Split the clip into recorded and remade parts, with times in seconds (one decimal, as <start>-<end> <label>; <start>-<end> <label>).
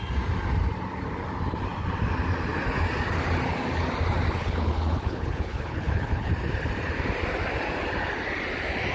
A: 0.0-4.4 recorded; 4.4-6.3 remade; 6.3-8.9 recorded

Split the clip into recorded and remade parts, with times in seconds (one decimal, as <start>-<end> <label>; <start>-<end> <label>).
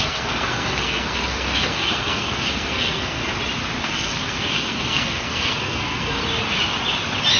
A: 0.0-3.2 remade; 3.2-3.8 recorded; 3.8-6.2 remade; 6.2-7.4 recorded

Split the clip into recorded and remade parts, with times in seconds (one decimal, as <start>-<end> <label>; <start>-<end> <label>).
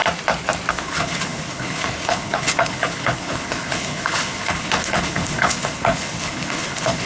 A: 0.0-0.7 recorded; 0.7-7.1 remade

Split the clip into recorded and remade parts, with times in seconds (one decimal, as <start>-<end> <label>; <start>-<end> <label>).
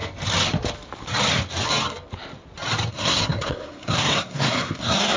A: 0.0-2.9 recorded; 2.9-5.2 remade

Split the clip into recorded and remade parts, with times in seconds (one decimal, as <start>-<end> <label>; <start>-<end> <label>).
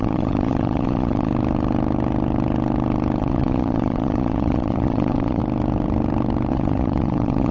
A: 0.0-1.3 remade; 1.3-3.2 recorded; 3.2-5.4 remade; 5.4-6.5 recorded; 6.5-7.5 remade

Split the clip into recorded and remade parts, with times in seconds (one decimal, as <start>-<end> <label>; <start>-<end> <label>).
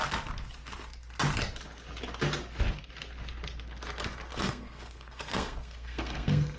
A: 0.0-4.3 recorded; 4.3-6.6 remade